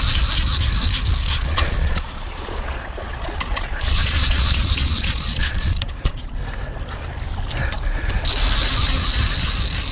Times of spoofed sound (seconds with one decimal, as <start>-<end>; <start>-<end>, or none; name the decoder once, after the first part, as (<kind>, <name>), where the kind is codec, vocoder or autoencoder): 1.2-6.3 (vocoder, Vocos)